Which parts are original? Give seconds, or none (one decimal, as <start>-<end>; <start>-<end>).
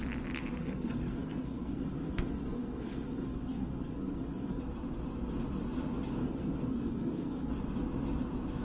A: 0.0-0.6; 4.6-6.2; 7.5-8.6